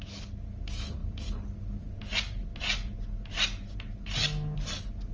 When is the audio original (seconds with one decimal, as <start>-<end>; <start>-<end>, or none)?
0.0-5.1